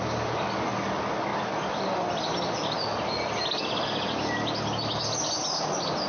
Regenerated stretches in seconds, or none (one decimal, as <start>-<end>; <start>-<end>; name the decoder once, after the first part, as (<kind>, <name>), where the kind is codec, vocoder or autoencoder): none